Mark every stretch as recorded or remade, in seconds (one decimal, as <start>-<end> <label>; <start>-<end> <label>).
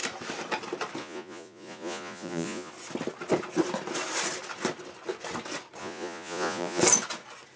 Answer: 0.0-1.0 recorded; 1.0-2.7 remade; 2.7-5.8 recorded; 5.8-6.8 remade; 6.8-7.6 recorded